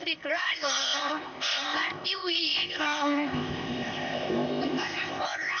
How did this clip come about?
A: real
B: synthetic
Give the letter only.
B